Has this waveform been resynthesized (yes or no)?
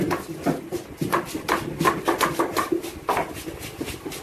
no